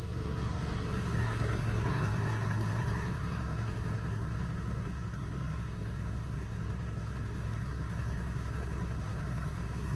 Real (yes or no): no